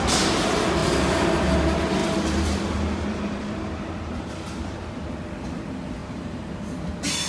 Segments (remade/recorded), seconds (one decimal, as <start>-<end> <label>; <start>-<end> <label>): 0.0-0.8 recorded; 0.8-1.3 remade; 1.3-2.0 recorded; 2.0-4.3 remade; 4.3-6.0 recorded; 6.0-6.5 remade; 6.5-7.3 recorded